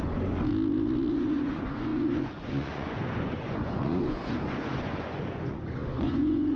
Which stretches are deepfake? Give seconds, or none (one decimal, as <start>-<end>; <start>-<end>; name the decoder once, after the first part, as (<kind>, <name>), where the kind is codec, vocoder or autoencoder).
0.0-0.5 (vocoder, Vocos); 1.1-6.6